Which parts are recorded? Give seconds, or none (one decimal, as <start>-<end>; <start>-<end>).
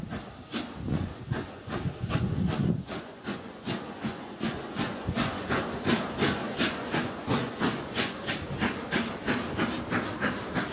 0.0-0.9; 5.6-6.4; 8.3-10.7